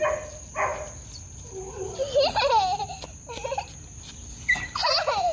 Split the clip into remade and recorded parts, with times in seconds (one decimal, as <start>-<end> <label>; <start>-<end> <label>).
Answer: 0.0-5.3 recorded